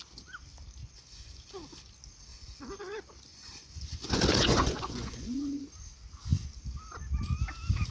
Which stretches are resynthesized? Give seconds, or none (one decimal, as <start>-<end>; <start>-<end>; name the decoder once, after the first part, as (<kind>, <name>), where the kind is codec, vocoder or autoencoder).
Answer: 0.8-1.4 (vocoder, Vocos); 2.3-2.8; 3.3-5.6